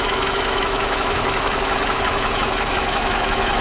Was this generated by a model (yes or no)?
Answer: yes